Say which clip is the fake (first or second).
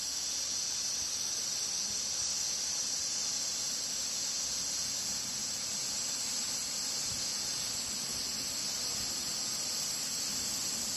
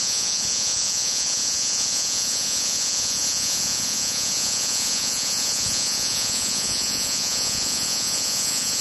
second